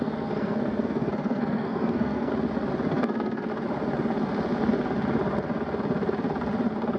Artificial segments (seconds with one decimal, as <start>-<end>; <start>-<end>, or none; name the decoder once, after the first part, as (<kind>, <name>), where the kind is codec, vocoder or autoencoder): 0.0-2.3 (codec, SNAC); 2.9-3.5